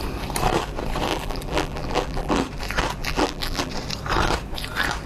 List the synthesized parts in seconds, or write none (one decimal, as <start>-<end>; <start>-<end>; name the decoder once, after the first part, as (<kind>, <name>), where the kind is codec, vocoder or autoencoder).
1.1-2.4 (vocoder, BigVGAN v2); 3.0-3.7